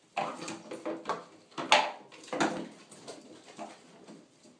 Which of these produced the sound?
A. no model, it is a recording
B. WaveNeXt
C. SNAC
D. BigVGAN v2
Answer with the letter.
A